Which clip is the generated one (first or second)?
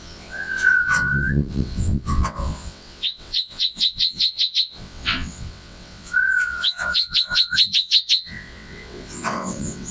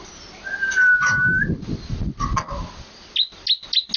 first